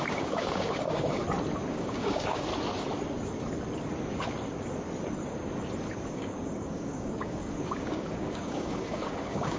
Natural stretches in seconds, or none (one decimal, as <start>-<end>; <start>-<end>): 1.2-1.7; 2.5-6.1